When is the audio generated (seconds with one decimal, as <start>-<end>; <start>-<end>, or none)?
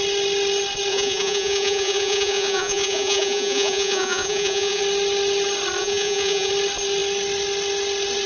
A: 0.9-4.8; 5.8-6.5